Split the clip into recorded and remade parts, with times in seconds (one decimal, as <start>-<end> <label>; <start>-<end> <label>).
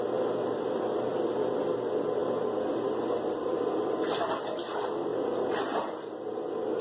0.0-6.8 recorded